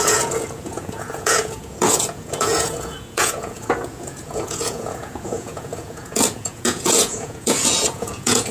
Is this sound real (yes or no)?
no